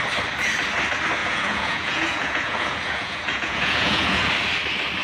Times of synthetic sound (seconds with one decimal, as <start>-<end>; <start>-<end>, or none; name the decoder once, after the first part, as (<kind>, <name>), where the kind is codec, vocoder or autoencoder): 1.2-4.2 (vocoder, Vocos)

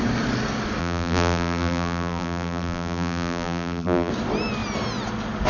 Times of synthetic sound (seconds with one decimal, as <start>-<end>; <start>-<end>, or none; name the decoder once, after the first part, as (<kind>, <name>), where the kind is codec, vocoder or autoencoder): 0.8-4.1 (vocoder, BigVGAN v2)